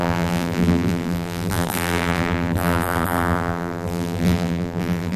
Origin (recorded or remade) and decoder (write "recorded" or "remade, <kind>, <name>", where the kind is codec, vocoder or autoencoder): remade, vocoder, BigVGAN v2